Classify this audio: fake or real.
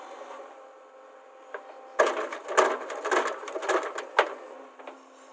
real